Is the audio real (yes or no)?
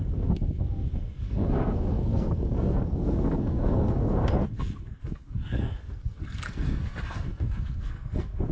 no